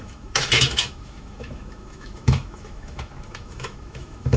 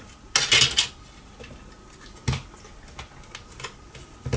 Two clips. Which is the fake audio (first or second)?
first